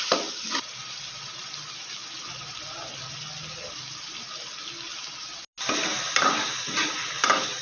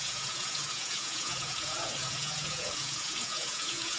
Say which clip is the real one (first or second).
first